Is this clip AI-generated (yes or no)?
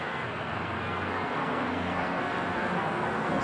yes